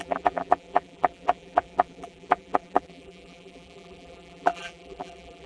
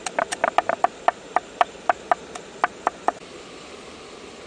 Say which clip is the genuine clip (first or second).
second